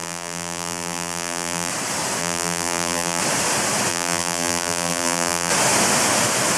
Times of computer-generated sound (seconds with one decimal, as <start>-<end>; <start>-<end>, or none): 0.0-1.7; 2.2-3.2; 3.9-5.5